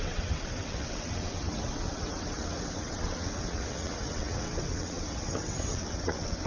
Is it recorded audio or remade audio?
remade